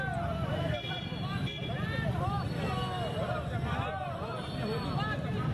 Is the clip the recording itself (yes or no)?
yes